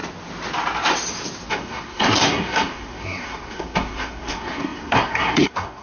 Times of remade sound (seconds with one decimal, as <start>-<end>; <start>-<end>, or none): 1.5-5.8